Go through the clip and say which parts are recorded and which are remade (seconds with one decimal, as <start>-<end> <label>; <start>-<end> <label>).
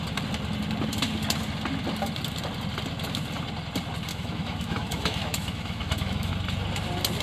0.0-4.1 recorded; 4.1-6.3 remade; 6.3-7.2 recorded